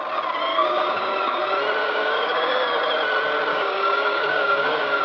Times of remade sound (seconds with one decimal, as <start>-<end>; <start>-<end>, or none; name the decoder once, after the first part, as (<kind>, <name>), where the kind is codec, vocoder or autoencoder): 0.5-1.4 (codec, DAC); 1.8-2.8; 3.5-5.0